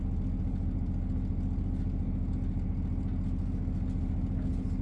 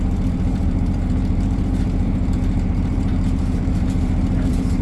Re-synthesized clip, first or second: second